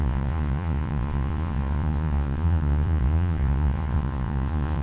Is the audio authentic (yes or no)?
no